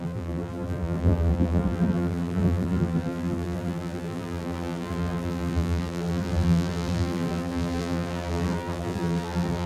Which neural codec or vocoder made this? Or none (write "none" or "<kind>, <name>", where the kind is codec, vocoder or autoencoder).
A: vocoder, BigVGAN v2